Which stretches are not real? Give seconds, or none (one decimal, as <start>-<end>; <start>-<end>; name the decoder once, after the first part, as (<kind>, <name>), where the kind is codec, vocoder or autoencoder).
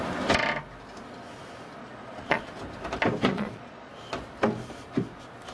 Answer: 1.8-2.4 (vocoder, Vocos); 3.3-3.9